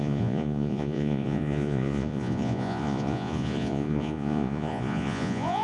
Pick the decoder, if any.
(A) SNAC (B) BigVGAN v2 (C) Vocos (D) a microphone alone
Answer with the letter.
C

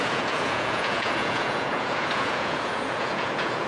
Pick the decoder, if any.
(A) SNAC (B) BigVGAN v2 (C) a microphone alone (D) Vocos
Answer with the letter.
D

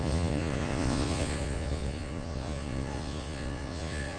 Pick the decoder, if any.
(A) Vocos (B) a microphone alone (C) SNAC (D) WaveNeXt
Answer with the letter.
A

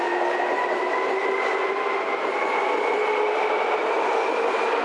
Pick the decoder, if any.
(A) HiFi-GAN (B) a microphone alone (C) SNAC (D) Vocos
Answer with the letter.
B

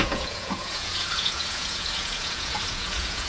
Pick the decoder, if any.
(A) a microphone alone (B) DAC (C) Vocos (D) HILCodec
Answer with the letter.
C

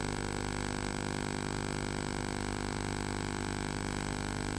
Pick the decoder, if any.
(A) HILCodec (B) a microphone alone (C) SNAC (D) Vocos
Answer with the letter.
B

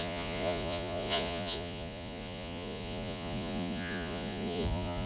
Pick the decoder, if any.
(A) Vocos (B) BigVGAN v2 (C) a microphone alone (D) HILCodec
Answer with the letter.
A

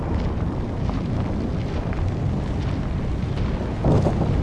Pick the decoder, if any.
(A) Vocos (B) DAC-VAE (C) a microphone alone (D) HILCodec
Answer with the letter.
C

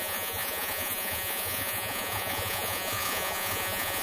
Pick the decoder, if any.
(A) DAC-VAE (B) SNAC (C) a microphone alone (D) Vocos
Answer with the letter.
D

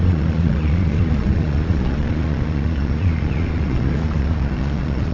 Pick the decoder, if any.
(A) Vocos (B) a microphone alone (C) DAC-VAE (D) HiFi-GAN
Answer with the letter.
A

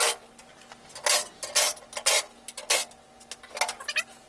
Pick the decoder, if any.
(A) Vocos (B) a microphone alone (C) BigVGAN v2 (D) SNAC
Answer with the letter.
B